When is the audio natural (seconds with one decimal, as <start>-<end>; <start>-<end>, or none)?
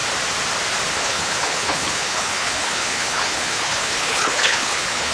0.0-0.9